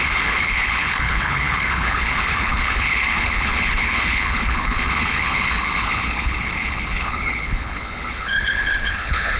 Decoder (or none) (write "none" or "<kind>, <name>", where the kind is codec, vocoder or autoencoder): codec, HILCodec